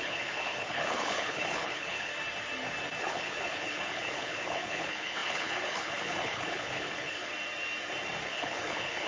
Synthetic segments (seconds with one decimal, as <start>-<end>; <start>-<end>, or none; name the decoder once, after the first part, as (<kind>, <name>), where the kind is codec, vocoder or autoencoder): 0.0-2.1 (codec, HILCodec); 3.0-7.3; 8.3-9.1

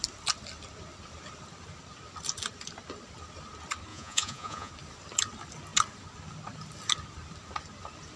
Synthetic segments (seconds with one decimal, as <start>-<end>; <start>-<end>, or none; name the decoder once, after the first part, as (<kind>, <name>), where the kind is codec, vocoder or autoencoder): 3.9-4.7 (vocoder, Vocos)